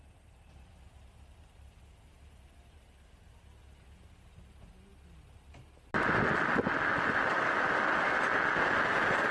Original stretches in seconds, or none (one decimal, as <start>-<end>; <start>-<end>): 0.0-9.3